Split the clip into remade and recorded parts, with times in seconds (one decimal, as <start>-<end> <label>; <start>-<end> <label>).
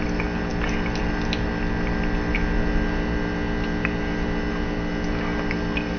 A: 0.0-6.0 recorded